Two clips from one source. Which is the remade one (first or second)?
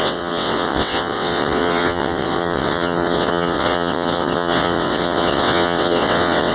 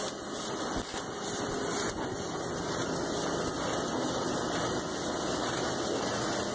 first